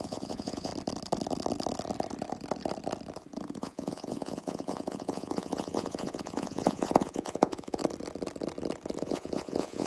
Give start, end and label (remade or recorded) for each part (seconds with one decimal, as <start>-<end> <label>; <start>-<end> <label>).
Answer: 0.0-0.7 remade; 0.7-3.6 recorded; 3.6-7.8 remade; 7.8-9.0 recorded; 9.0-9.9 remade